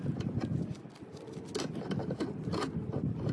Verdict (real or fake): real